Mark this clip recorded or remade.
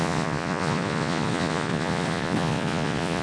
remade